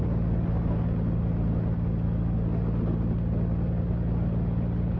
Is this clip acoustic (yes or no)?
yes